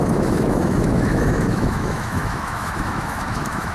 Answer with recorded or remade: remade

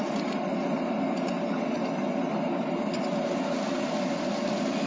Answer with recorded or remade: recorded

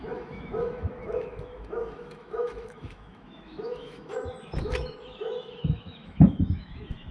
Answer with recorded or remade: remade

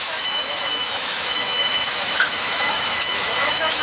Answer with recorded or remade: remade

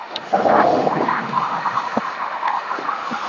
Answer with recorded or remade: remade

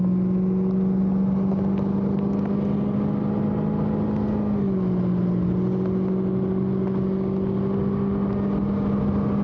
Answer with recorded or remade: recorded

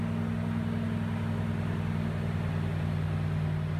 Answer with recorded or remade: recorded